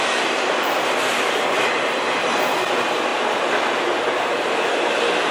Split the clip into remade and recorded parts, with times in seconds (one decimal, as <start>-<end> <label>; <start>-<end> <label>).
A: 0.0-5.3 remade